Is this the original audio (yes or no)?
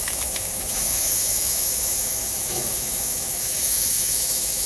no